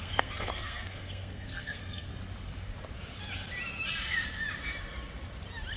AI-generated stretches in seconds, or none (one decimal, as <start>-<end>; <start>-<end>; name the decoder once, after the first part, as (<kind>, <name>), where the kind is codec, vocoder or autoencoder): 0.0-2.1 (codec, SNAC)